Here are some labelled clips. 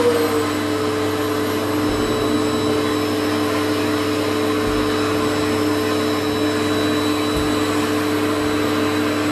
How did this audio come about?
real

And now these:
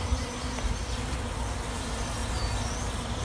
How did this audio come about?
real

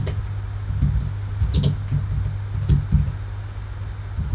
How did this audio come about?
real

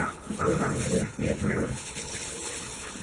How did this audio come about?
fake